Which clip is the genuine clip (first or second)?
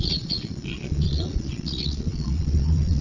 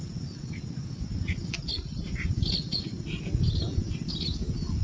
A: second